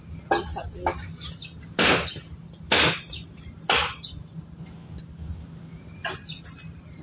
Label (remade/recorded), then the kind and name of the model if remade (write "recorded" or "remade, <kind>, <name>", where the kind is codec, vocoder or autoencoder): recorded